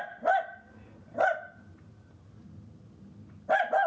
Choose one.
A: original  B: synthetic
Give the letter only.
A